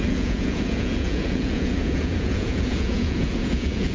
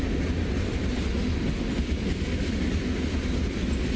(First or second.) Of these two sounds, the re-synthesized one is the first